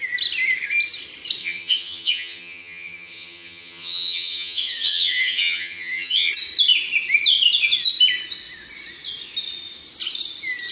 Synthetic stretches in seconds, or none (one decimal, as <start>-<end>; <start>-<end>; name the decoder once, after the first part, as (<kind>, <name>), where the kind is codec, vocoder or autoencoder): 1.4-6.3 (vocoder, HiFi-GAN)